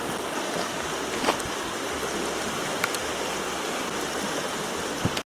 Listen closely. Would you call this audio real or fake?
real